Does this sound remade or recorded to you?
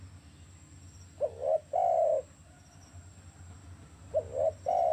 recorded